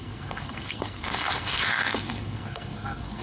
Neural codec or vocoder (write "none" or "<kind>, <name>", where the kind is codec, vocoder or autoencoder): codec, SNAC